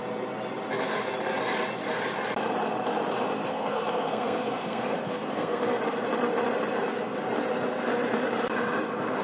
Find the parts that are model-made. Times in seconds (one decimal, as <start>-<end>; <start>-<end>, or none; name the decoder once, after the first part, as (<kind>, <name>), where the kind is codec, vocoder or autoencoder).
3.5-5.6 (codec, SNAC)